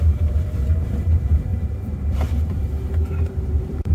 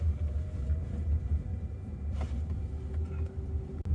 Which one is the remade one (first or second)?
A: first